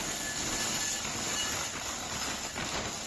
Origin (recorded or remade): recorded